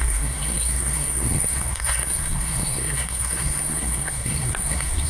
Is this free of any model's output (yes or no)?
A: no